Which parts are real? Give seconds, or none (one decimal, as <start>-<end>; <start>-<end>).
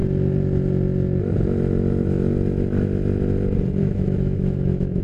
0.0-3.8